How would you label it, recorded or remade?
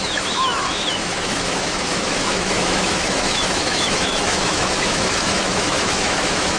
remade